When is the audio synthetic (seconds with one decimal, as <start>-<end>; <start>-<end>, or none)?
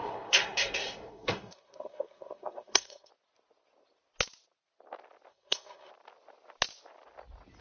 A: 0.0-3.1; 5.3-5.9